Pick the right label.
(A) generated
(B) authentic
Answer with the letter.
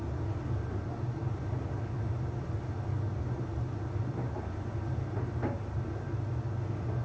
B